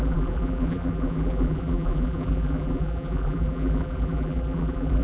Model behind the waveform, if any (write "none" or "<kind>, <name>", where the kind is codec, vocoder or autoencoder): vocoder, BigVGAN v2